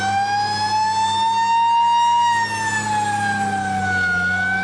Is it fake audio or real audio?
real